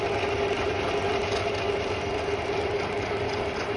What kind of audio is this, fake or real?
real